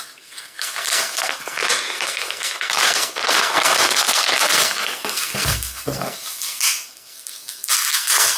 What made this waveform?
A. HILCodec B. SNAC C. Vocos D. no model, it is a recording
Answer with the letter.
B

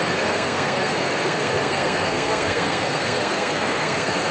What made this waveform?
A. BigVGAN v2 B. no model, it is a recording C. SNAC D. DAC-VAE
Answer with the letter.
C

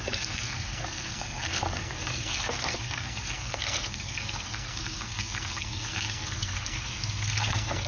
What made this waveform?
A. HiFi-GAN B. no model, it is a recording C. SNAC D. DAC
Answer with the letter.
C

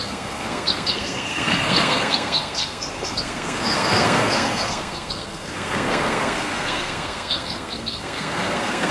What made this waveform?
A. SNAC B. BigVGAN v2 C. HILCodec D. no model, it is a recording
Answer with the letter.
A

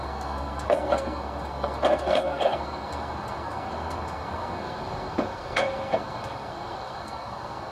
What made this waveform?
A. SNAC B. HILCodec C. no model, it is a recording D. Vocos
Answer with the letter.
A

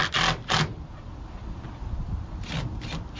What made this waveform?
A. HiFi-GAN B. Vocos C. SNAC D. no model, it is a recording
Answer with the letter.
D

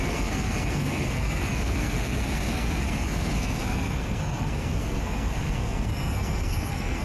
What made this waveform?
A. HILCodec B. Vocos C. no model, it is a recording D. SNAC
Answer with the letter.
D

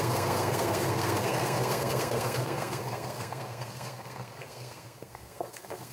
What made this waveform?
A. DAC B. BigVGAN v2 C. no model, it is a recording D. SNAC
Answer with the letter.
D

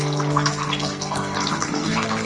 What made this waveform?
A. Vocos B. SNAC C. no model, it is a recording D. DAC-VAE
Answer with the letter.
B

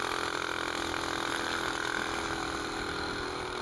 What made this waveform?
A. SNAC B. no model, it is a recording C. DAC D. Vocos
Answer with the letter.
B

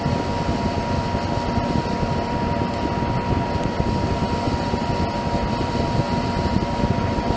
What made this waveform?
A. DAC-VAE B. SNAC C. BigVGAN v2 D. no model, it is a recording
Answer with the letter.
D